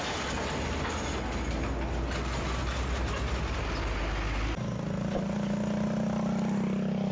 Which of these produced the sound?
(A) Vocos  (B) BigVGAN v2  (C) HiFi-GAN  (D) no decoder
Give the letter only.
D